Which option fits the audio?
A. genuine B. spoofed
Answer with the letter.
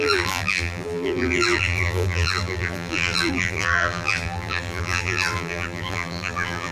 B